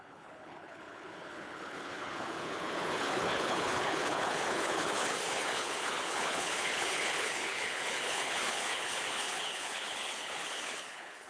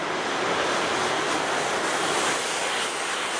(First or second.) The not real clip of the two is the first